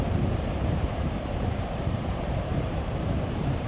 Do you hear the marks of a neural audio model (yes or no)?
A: yes